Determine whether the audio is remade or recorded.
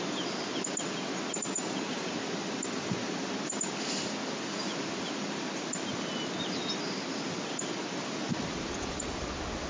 recorded